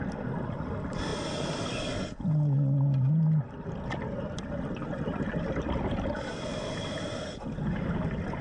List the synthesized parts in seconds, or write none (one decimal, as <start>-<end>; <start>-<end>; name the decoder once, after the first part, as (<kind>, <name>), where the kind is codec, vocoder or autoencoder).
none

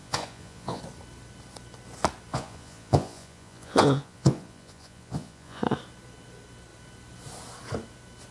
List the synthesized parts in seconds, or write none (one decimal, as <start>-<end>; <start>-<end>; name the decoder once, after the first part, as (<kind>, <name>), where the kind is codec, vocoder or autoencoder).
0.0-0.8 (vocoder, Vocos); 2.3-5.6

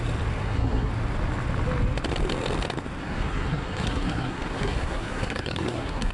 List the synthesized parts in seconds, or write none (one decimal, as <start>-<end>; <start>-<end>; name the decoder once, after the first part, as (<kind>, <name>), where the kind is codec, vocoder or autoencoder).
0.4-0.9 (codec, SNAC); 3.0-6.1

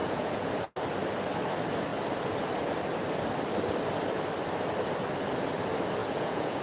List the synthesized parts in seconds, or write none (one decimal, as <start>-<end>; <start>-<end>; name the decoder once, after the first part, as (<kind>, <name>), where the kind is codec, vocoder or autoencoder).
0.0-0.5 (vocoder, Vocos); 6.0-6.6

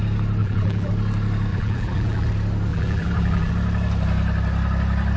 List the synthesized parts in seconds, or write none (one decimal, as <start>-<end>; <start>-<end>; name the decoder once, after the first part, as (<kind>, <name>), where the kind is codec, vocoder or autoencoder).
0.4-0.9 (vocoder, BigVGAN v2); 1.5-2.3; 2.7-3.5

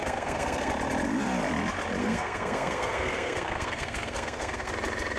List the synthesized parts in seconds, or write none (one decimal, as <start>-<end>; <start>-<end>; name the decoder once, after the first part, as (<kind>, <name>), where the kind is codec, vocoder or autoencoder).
0.0-0.7 (codec, SNAC); 2.0-4.7